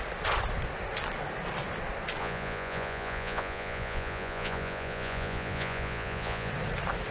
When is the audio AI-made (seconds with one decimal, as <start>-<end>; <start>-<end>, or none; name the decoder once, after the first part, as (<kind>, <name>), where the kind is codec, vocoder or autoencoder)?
2.2-6.5 (vocoder, Vocos)